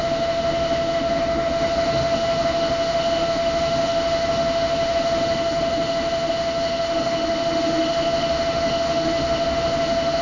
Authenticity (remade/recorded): remade